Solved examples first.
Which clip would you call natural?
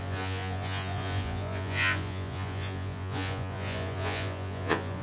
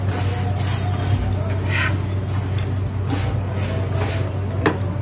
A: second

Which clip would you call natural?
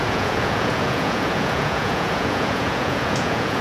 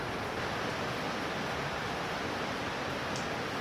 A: second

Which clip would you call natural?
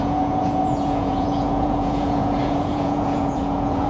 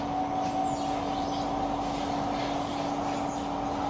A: second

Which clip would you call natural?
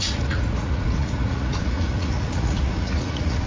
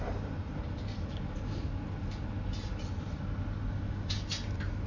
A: second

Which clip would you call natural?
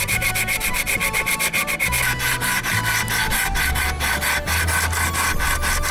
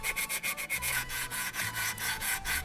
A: first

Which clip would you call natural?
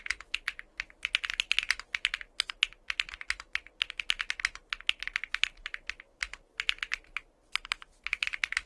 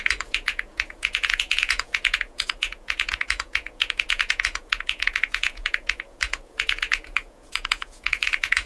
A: first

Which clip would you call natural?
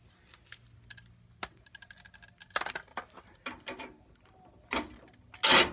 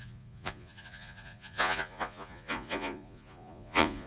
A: first